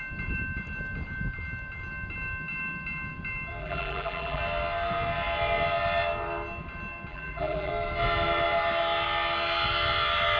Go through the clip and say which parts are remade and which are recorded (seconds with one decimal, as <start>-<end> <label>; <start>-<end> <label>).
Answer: 0.0-3.6 recorded; 3.6-4.4 remade; 4.4-7.1 recorded; 7.1-7.7 remade; 7.7-10.4 recorded